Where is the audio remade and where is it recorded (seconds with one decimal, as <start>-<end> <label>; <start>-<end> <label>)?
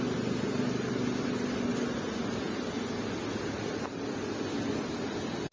0.0-5.5 recorded